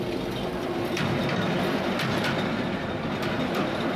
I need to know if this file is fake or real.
fake